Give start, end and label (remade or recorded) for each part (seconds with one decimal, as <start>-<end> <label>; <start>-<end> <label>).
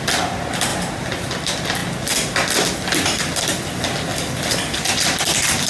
0.0-0.7 recorded; 0.7-1.4 remade; 1.4-4.1 recorded; 4.1-5.7 remade